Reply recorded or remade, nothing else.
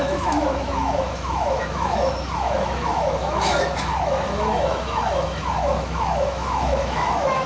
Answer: remade